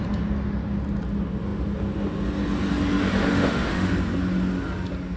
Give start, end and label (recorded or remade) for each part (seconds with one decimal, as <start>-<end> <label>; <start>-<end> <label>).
0.0-3.2 recorded; 3.2-3.9 remade; 3.9-5.2 recorded